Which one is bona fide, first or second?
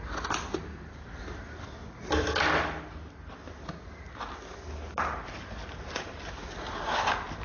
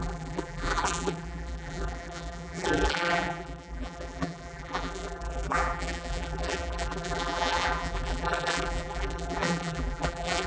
first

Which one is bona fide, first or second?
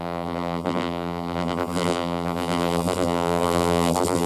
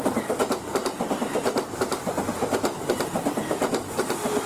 second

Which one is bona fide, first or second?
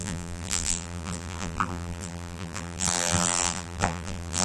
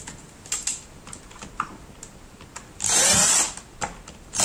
second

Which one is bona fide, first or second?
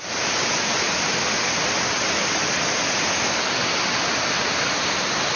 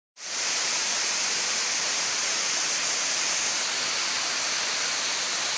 first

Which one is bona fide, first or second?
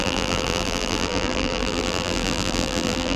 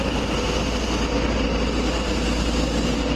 second